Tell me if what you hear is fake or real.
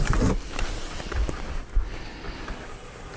real